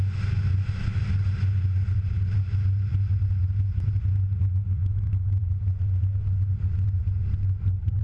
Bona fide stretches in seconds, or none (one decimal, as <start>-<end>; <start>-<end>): 0.0-4.8; 5.4-8.0